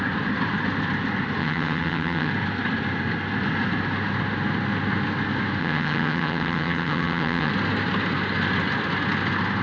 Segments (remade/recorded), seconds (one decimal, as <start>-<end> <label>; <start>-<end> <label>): 0.0-1.4 recorded; 1.4-2.3 remade; 2.3-5.6 recorded; 5.6-7.5 remade; 7.5-9.6 recorded